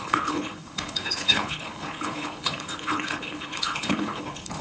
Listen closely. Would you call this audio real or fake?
fake